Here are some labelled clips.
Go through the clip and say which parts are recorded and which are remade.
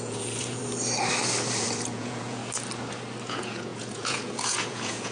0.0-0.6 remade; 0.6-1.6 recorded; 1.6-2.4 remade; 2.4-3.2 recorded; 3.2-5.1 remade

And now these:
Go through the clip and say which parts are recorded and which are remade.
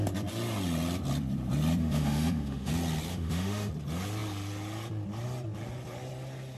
0.0-1.8 recorded; 1.8-2.7 remade; 2.7-3.1 recorded; 3.1-3.7 remade; 3.7-6.6 recorded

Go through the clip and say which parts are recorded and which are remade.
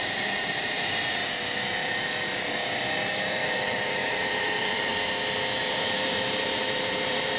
0.0-1.2 remade; 1.2-4.1 recorded; 4.1-4.9 remade; 4.9-5.6 recorded; 5.6-7.4 remade